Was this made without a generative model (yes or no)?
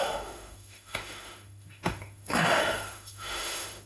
no